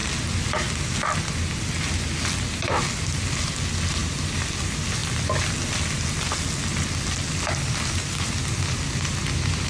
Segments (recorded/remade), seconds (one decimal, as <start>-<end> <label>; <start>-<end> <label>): 0.0-9.7 recorded